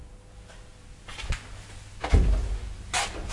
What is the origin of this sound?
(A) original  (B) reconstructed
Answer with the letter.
A